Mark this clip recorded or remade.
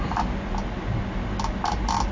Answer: recorded